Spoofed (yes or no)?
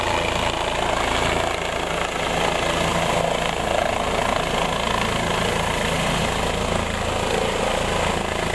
no